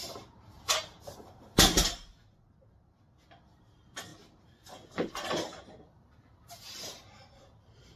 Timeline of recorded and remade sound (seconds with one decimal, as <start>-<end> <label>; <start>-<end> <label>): 0.0-1.5 remade; 1.5-3.6 recorded; 3.6-4.1 remade; 4.1-6.8 recorded; 6.8-8.0 remade